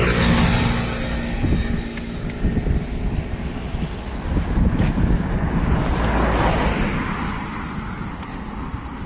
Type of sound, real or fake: real